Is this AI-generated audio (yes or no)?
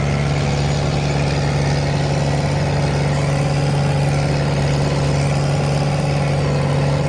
no